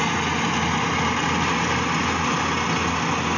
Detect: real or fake real